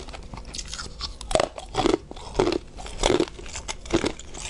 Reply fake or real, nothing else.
real